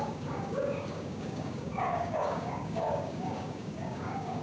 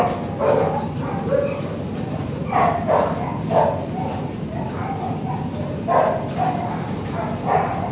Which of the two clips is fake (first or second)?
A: first